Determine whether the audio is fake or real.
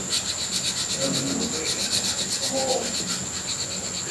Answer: real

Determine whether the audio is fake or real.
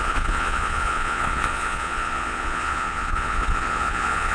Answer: fake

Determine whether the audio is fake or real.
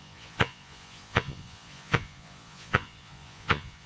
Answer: fake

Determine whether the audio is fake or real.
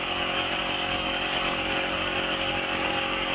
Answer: fake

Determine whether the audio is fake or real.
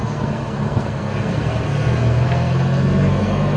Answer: fake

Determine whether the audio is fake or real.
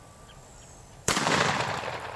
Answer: fake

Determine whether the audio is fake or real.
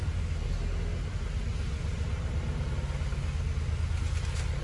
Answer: real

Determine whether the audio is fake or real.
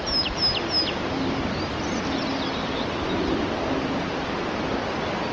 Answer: real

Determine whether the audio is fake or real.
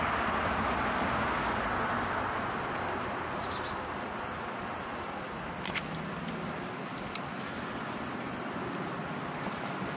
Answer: real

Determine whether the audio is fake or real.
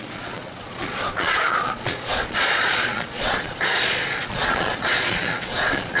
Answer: fake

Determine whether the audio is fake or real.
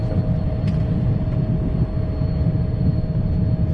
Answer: real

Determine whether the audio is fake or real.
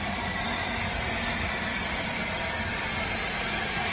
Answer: real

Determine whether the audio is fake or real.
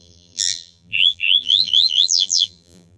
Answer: fake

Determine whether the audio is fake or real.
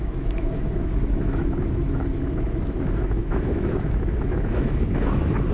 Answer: fake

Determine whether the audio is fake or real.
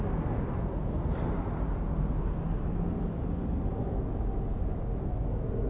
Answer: real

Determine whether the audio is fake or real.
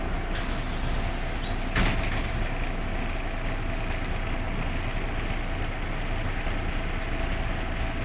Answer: real